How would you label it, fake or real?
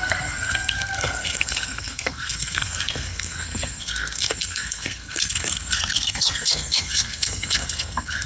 fake